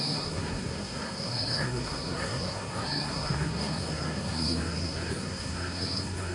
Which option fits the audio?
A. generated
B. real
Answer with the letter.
A